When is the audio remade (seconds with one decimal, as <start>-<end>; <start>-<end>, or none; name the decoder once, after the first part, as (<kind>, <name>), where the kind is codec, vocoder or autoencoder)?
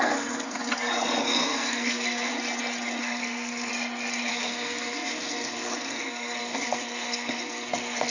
0.0-0.6 (codec, SNAC); 1.2-2.3; 3.0-3.7; 4.3-8.1